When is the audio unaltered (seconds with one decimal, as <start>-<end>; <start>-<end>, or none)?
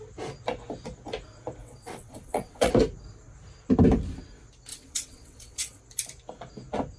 0.0-1.6; 2.7-4.7; 5.8-7.0